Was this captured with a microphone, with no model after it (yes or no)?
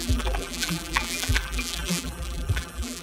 no